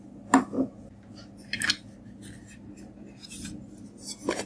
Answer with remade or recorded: recorded